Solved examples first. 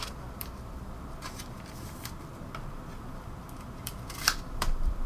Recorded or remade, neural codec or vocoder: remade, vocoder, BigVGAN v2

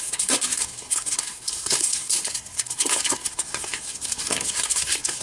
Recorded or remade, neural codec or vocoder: remade, codec, SNAC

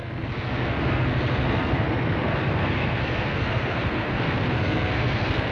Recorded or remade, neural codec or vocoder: remade, codec, SNAC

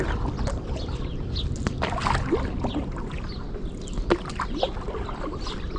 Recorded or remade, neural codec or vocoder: recorded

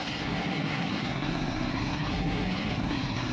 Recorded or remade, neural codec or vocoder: remade, codec, SNAC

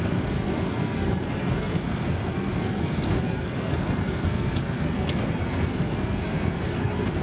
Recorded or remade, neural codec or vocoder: remade, codec, SNAC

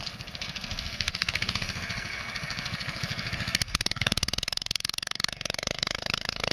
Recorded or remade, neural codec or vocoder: remade, codec, SNAC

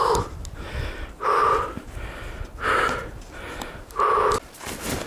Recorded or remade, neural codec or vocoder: recorded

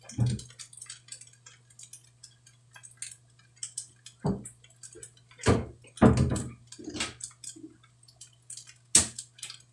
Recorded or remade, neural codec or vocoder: recorded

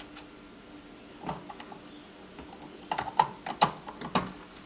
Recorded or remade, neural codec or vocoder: recorded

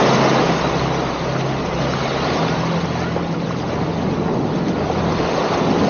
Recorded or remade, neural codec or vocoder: recorded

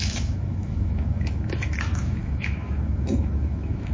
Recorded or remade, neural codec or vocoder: remade, autoencoder, DAC-VAE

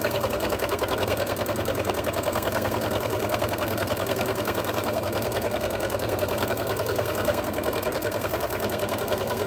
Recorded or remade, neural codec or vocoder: remade, codec, SNAC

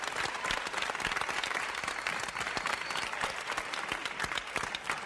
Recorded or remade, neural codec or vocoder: remade, vocoder, BigVGAN v2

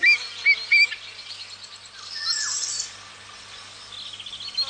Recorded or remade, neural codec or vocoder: recorded